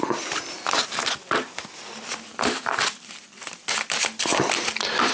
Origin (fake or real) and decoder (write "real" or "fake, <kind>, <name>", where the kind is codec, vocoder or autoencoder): real